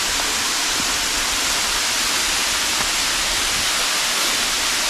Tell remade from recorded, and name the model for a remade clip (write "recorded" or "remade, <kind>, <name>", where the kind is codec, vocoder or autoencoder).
recorded